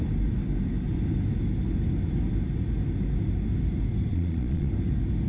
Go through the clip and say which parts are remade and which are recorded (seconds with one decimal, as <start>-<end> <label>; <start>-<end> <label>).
0.0-4.1 recorded; 4.1-4.7 remade; 4.7-5.3 recorded